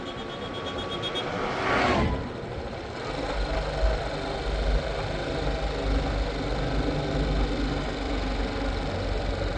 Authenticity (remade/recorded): recorded